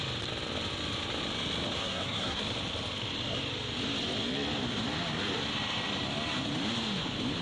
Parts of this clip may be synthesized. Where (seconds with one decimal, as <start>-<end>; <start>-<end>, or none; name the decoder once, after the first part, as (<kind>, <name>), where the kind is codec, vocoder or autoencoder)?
1.8-2.4 (codec, SNAC)